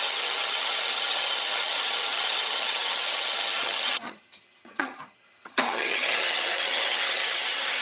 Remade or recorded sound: remade